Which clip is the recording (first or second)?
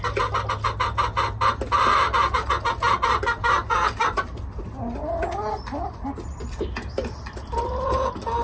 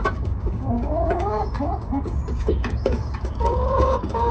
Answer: first